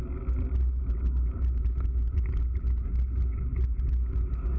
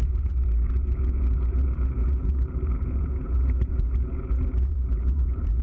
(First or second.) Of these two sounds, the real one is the first